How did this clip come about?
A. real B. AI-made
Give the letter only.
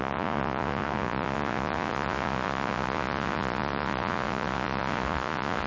B